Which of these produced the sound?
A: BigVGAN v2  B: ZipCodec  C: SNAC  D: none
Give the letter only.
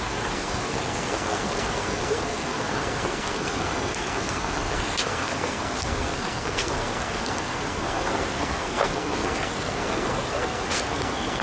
C